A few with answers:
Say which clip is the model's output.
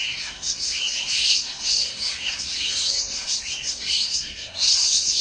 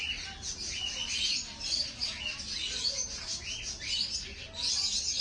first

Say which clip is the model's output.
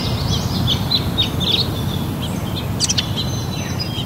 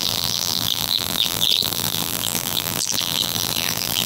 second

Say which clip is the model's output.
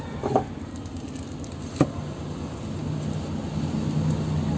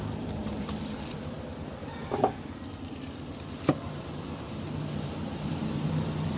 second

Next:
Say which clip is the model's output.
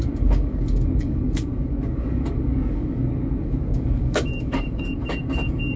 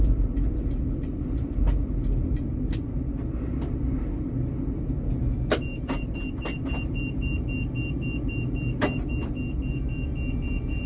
first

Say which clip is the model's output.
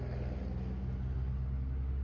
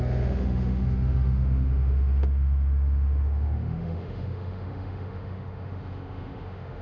second